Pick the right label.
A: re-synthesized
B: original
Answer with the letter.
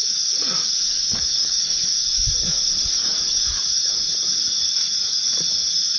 A